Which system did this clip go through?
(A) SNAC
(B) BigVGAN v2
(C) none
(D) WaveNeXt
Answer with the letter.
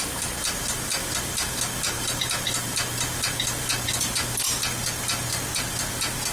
C